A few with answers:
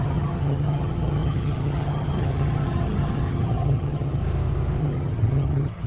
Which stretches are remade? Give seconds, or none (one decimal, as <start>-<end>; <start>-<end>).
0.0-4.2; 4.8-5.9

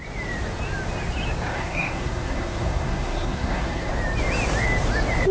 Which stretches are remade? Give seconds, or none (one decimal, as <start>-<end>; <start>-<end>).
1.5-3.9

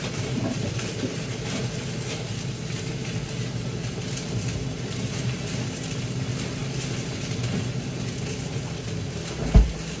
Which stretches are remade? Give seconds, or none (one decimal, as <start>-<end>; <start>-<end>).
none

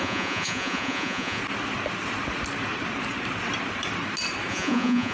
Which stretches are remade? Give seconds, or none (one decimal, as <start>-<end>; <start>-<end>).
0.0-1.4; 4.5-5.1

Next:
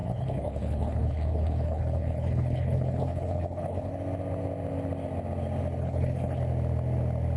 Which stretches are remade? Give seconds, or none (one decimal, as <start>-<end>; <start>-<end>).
0.0-3.9; 5.8-6.4

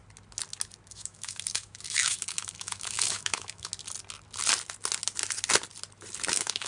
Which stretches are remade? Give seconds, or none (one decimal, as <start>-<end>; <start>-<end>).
0.9-3.7; 6.3-6.7